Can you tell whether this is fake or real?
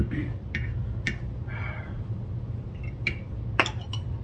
real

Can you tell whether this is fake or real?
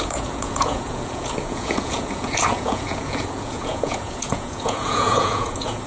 fake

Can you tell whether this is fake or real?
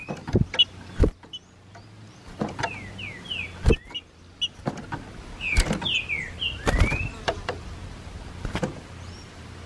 real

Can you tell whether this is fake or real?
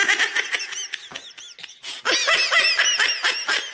real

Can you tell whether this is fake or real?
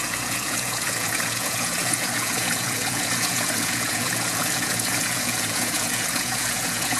fake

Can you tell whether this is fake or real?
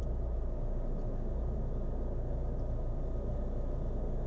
real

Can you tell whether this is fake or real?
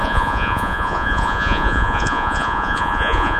fake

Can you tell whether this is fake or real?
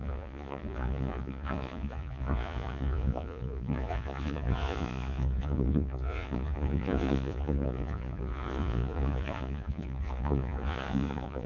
fake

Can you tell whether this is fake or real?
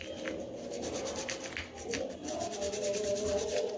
real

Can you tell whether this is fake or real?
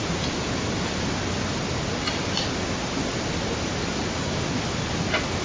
real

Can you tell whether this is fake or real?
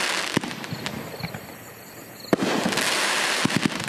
real